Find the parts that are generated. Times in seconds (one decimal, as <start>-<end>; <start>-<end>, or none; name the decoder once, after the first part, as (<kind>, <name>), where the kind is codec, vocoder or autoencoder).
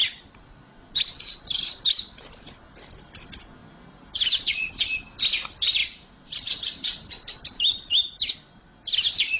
0.0-1.4 (vocoder, BigVGAN v2); 3.6-4.7; 5.8-7.6